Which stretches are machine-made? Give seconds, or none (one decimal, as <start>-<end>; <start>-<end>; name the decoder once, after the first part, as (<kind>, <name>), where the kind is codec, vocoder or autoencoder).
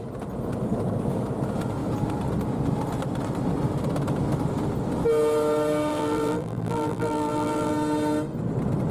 5.9-7.7 (vocoder, BigVGAN v2)